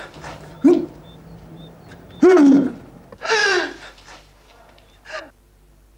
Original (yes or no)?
no